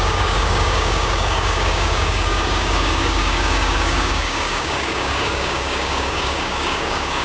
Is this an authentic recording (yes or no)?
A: no